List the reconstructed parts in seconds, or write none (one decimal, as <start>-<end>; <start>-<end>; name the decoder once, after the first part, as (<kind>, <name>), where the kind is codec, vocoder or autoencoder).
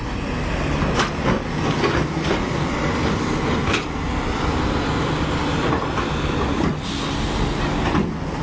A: none